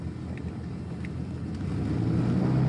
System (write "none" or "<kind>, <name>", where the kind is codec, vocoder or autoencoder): none